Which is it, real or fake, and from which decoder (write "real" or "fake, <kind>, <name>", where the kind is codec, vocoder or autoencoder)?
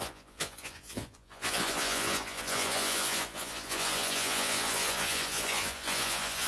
fake, vocoder, Vocos